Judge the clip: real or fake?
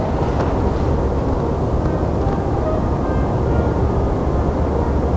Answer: real